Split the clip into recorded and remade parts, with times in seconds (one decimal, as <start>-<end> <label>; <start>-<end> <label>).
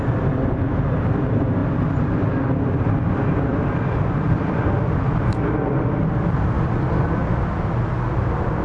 0.0-3.5 recorded; 3.5-6.0 remade; 6.0-8.6 recorded